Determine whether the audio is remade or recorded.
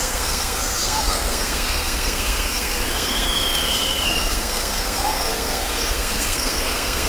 remade